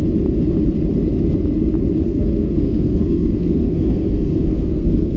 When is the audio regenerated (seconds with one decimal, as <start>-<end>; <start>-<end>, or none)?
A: 2.0-5.2